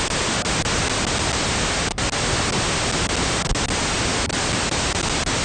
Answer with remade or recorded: recorded